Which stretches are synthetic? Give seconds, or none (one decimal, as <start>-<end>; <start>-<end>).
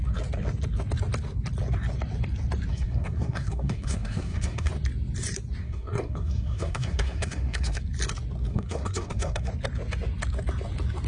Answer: 2.7-4.7; 5.6-7.8; 8.5-9.5